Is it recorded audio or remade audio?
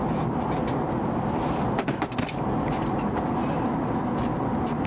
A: recorded